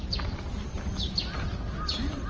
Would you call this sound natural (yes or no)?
yes